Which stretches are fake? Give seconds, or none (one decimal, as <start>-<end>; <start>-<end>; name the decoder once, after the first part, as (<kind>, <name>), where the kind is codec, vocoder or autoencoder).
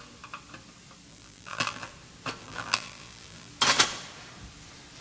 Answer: 1.1-1.9 (vocoder, BigVGAN v2); 2.4-3.5